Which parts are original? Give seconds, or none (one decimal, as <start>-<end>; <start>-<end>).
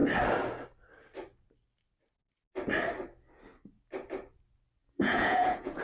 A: 0.0-4.8